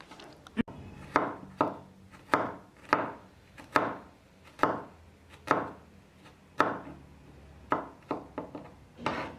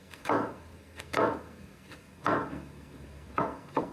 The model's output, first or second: second